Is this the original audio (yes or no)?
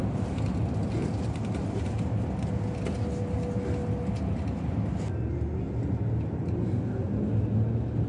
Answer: yes